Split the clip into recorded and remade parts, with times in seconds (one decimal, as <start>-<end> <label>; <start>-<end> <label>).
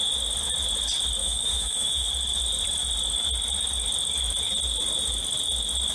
0.0-1.2 recorded; 1.2-2.1 remade; 2.1-5.9 recorded